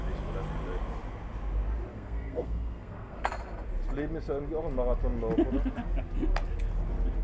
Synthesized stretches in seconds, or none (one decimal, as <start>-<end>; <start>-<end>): 1.9-3.3